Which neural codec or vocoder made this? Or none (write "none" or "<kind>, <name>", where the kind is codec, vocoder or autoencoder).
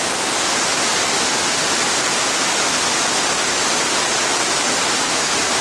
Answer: none